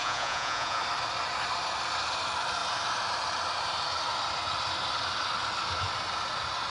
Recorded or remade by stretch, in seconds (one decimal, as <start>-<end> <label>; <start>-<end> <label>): 0.0-0.8 remade; 0.8-6.7 recorded